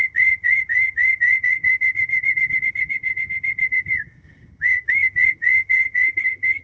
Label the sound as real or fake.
fake